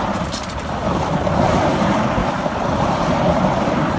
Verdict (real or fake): fake